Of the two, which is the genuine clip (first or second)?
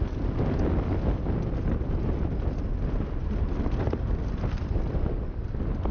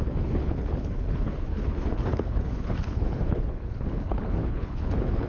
first